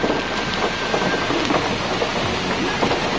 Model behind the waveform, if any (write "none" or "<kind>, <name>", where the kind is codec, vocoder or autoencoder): none